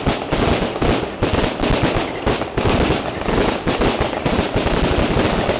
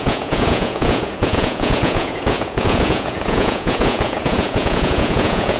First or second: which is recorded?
first